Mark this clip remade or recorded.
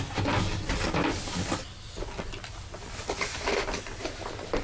recorded